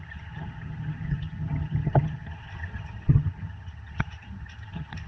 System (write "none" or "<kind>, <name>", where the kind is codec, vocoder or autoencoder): vocoder, HiFi-GAN